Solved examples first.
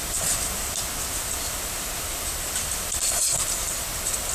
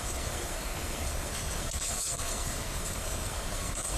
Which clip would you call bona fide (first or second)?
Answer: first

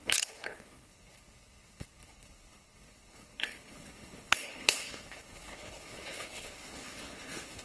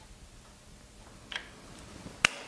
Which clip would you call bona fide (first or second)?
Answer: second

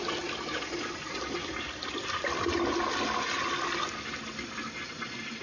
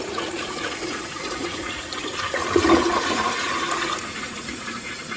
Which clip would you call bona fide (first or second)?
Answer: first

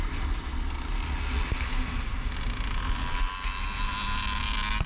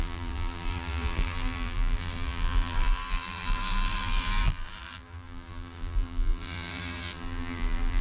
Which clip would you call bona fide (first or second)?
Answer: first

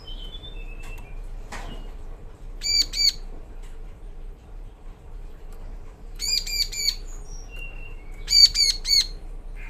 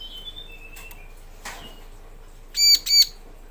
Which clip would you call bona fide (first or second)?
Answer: second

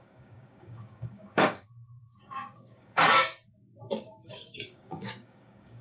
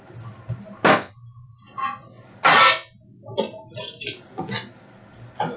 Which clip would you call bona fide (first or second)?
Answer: second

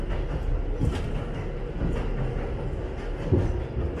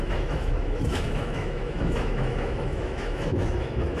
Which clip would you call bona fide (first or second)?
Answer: first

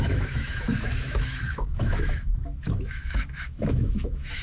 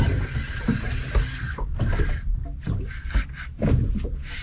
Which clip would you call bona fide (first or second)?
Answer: second